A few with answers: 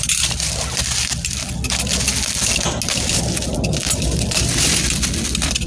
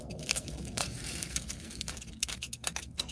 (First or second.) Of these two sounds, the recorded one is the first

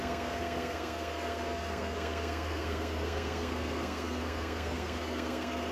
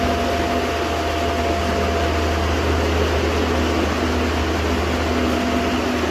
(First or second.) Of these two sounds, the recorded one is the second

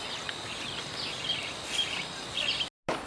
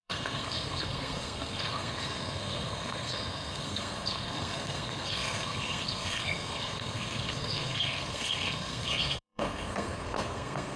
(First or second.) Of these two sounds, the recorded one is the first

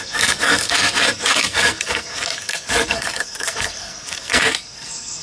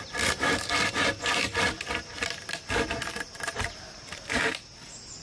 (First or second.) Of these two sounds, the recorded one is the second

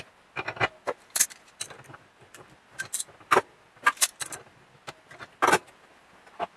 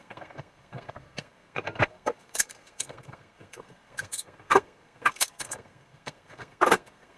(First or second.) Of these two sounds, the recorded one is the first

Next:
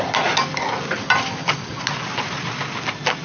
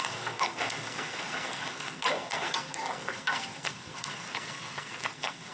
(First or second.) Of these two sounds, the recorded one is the first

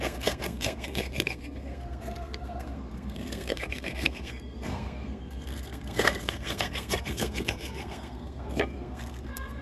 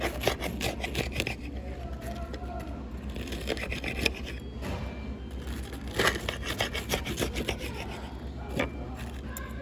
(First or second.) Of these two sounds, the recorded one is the second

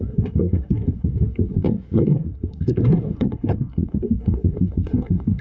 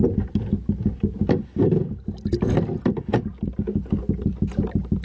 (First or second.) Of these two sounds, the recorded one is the second